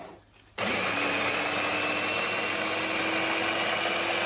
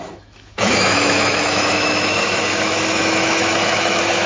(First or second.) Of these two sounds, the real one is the first